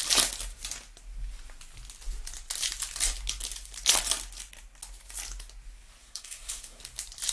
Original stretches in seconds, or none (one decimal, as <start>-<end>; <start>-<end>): 0.0-6.0; 6.8-7.3